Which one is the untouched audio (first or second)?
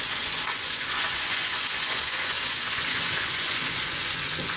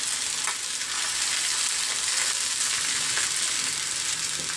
second